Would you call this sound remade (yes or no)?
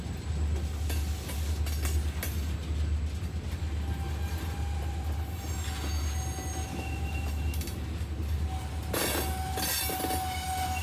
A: no